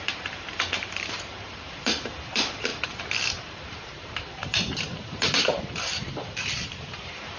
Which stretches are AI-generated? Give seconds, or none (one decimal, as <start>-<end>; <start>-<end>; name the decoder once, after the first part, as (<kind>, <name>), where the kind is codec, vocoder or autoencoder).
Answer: 0.0-7.4 (vocoder, BigVGAN v2)